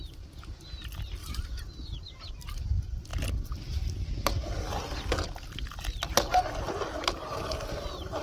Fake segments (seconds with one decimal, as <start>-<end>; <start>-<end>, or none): 1.2-2.3

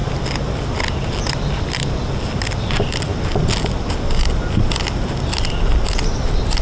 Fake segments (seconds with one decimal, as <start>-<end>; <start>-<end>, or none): 1.3-3.1; 6.1-6.6